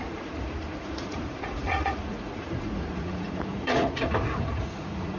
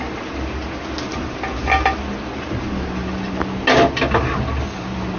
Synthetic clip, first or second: first